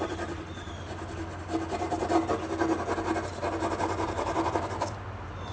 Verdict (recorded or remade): recorded